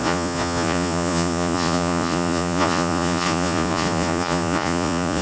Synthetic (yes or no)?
yes